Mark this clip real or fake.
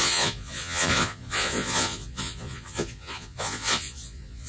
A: fake